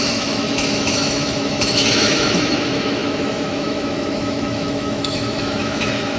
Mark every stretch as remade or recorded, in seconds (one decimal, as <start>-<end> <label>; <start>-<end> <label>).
0.0-6.2 remade